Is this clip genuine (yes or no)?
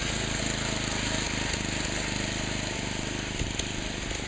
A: yes